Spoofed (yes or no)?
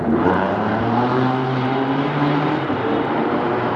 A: yes